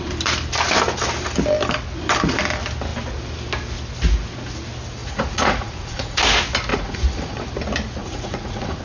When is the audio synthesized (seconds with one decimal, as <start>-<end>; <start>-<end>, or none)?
5.0-6.2; 6.7-7.4; 8.0-8.8